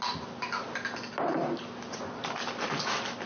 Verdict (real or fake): real